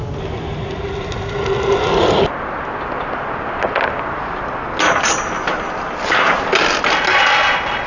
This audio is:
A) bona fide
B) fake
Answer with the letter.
A